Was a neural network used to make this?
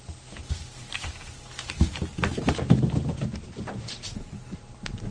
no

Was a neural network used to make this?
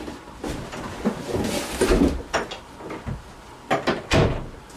no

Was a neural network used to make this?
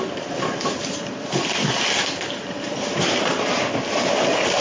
yes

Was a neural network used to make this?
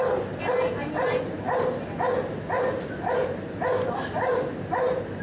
no